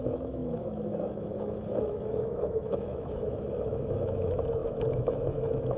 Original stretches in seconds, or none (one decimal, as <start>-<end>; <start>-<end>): none